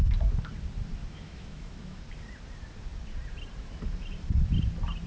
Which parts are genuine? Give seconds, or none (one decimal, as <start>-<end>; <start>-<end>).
0.0-1.0; 2.0-5.1